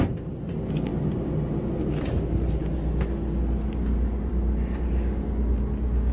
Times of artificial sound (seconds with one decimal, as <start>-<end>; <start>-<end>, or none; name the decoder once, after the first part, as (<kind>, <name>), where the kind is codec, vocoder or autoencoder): none